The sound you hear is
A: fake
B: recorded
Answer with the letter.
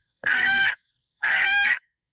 A